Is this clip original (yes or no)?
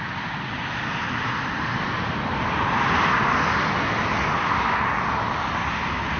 yes